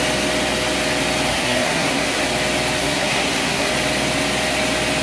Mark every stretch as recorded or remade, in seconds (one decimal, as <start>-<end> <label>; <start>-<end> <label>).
0.0-1.3 recorded; 1.3-2.2 remade; 2.2-2.8 recorded; 2.8-3.7 remade; 3.7-5.0 recorded